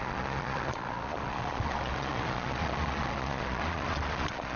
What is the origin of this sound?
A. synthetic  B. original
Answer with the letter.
A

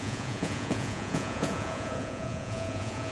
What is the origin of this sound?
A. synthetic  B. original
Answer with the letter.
A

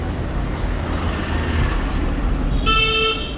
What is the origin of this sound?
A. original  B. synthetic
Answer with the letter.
A